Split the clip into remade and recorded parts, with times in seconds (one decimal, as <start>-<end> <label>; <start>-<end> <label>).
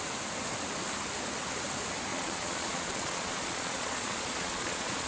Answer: 0.0-2.1 recorded; 2.1-5.1 remade